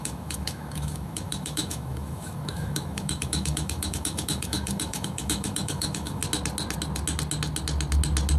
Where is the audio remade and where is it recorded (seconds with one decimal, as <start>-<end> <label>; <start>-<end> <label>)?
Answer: 0.0-6.2 remade; 6.2-8.4 recorded